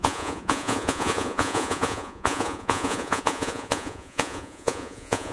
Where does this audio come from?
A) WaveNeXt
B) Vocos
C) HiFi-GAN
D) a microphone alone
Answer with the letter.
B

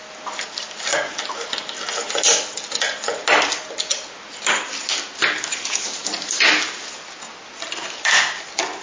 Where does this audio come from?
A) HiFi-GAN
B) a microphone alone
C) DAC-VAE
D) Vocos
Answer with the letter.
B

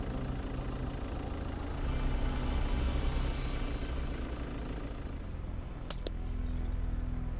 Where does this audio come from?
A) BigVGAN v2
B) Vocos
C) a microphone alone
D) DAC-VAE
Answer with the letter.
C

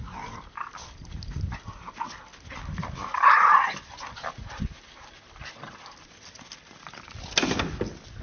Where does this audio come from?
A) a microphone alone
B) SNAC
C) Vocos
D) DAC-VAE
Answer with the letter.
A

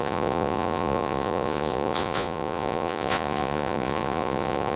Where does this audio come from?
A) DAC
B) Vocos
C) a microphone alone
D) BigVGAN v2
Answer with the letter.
B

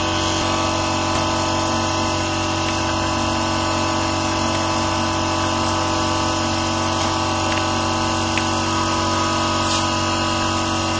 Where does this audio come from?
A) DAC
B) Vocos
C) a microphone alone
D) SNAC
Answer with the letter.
C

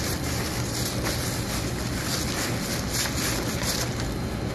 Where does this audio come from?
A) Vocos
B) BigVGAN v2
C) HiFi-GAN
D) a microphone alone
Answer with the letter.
D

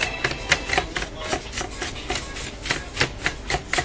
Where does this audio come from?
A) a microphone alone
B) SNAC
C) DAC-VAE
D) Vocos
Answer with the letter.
A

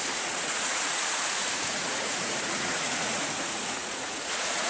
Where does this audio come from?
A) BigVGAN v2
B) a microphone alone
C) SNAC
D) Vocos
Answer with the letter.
D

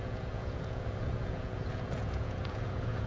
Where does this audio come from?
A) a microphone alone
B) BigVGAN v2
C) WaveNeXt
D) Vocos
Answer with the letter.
D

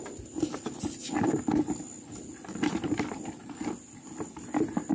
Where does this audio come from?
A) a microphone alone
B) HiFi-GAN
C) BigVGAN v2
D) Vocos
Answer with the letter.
A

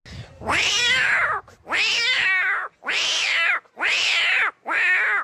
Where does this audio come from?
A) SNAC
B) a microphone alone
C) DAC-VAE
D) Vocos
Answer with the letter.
B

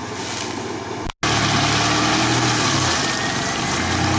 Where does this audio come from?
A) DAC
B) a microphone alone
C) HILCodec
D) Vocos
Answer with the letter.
B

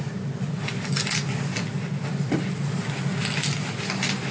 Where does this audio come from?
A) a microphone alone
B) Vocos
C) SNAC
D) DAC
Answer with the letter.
A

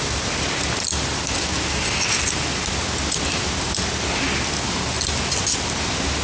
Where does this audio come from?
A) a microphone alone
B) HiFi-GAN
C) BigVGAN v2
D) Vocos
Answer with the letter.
A